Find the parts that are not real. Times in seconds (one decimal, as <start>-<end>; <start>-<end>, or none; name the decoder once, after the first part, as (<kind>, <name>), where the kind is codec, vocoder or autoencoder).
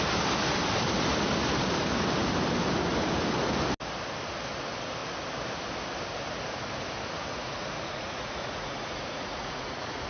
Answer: 7.3-10.1 (vocoder, Vocos)